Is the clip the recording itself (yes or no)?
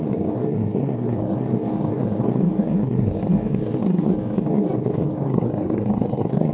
no